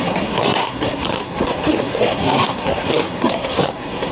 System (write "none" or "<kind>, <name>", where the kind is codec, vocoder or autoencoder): codec, SNAC